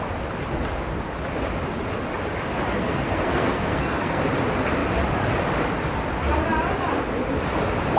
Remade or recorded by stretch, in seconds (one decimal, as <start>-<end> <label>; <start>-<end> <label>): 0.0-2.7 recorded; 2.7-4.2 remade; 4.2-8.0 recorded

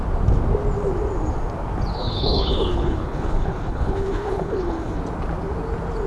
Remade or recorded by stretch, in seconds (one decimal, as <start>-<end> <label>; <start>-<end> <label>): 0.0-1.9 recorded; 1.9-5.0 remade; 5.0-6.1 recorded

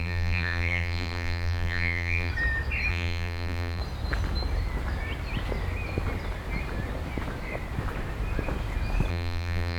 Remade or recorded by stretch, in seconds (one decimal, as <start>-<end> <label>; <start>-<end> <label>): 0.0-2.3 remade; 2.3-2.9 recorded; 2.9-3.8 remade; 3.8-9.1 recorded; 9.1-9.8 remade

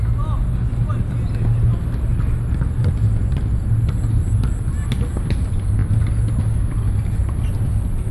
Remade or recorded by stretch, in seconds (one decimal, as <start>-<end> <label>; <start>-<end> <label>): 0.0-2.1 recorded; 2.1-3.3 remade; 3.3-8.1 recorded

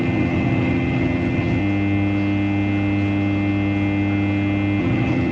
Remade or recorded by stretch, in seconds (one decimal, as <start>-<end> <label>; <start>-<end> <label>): 0.0-1.6 remade; 1.6-4.8 recorded; 4.8-5.3 remade

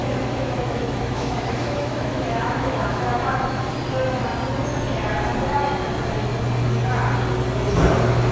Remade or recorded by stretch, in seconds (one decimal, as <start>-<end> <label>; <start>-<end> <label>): 0.0-3.6 remade; 3.6-8.3 recorded